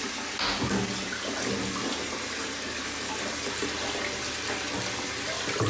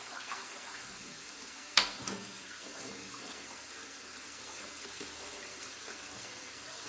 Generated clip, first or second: second